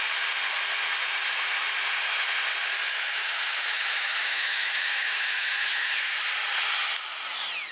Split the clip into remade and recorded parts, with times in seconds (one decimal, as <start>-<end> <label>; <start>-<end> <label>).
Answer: 0.0-2.8 recorded; 2.8-6.1 remade; 6.1-7.7 recorded